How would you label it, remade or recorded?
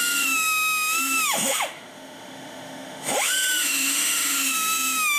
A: remade